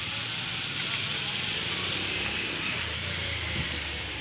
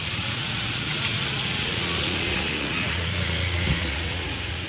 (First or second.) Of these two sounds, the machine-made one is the second